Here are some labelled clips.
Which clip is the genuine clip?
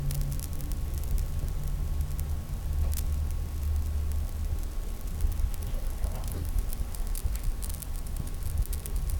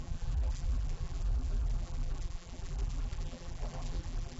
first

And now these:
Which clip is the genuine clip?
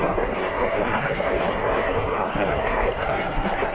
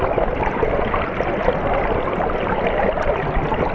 second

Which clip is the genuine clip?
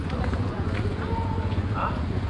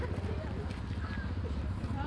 second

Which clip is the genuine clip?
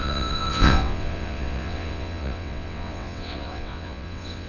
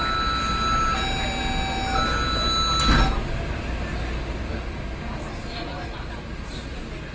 second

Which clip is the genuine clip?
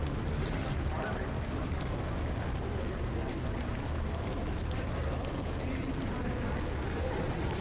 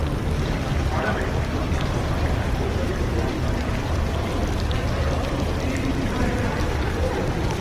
first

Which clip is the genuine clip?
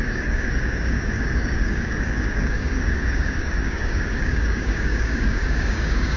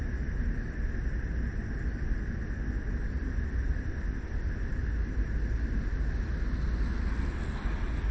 second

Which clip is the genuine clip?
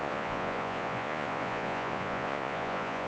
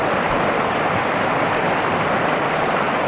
second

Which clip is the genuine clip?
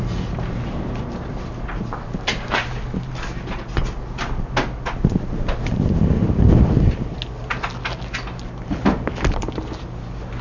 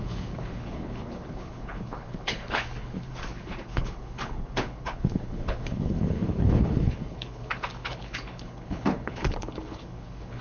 first